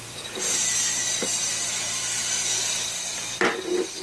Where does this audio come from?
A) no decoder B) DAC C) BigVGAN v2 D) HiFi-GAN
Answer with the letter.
C